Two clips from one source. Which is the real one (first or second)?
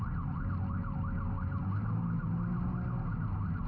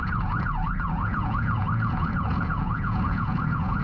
first